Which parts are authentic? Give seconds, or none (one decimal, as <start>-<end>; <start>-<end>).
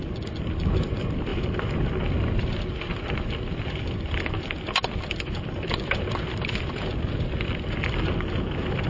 0.0-8.9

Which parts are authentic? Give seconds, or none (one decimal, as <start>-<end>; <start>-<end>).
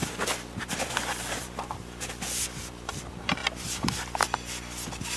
3.4-5.2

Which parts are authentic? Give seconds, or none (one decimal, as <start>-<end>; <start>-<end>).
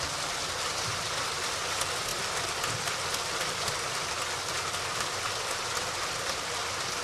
0.0-7.0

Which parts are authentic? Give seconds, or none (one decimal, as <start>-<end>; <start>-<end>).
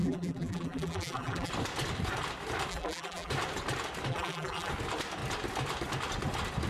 1.5-2.7; 3.3-4.1; 4.7-6.7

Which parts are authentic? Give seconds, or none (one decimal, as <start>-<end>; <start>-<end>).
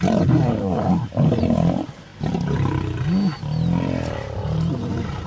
2.1-3.8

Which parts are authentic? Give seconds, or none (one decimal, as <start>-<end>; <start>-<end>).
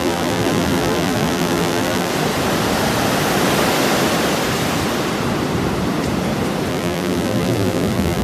2.1-6.7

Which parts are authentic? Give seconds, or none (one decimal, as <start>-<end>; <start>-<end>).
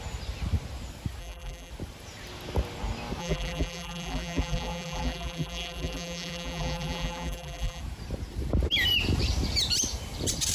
0.0-1.2; 1.7-3.2; 7.8-10.5